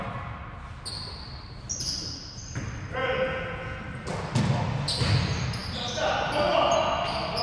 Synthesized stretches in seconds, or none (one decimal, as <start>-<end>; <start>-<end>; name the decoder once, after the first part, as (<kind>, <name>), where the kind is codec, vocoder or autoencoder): 3.0-3.8 (vocoder, Vocos)